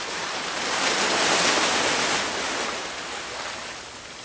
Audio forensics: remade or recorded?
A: recorded